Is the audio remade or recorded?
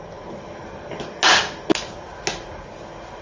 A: recorded